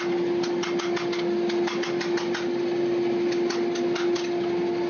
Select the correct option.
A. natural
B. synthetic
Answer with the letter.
A